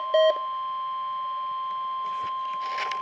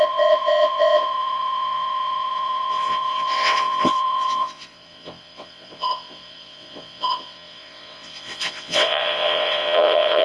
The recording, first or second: first